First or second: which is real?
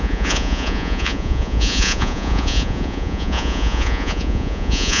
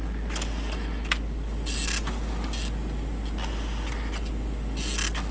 second